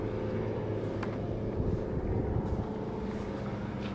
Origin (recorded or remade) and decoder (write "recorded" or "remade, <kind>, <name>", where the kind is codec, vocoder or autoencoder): recorded